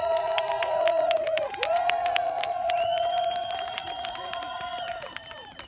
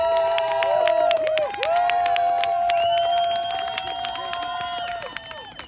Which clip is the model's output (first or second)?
first